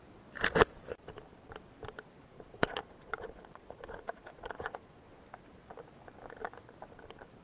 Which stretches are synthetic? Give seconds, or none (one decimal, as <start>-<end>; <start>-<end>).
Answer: 2.3-5.2